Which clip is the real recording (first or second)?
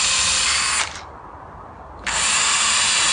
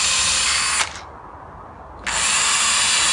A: second